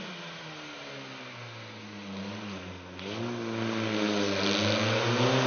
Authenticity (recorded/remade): recorded